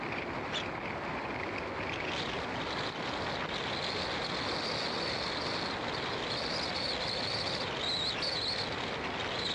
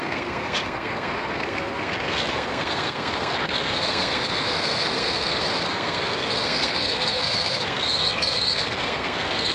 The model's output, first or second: second